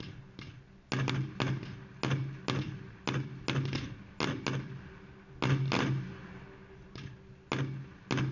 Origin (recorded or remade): recorded